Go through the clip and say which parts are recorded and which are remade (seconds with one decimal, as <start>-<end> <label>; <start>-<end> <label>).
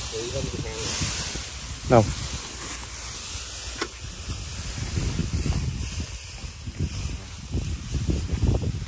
0.0-8.9 recorded